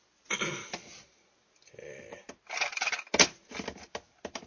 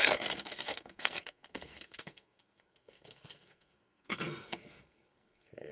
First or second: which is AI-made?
second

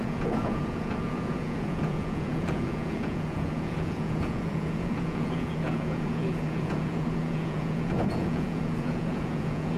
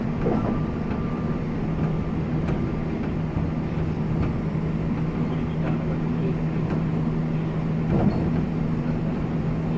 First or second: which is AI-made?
first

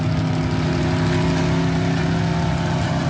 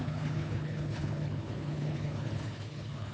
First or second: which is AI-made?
second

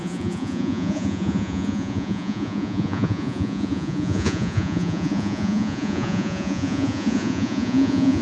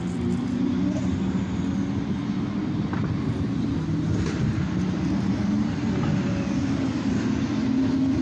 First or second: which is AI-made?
first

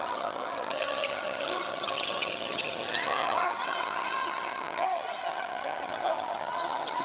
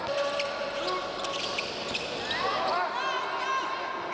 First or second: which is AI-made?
first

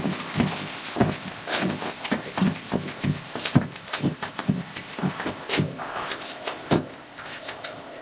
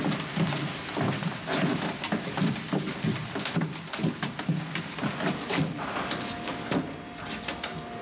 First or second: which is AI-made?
first